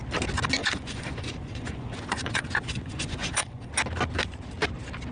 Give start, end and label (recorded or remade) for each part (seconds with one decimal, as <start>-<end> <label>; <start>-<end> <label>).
0.0-0.6 recorded; 0.6-3.7 remade; 3.7-5.1 recorded